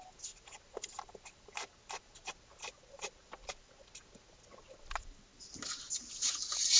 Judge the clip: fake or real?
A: real